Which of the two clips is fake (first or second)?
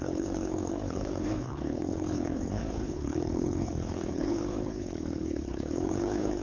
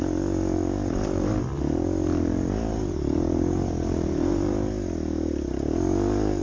first